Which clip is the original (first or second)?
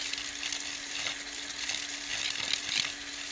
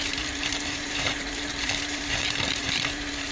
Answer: first